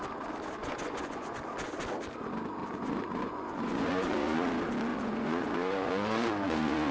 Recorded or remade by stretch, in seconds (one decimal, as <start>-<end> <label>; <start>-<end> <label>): 0.0-0.6 recorded; 0.6-1.4 remade; 1.4-2.6 recorded; 2.6-4.5 remade; 4.5-4.9 recorded; 4.9-6.9 remade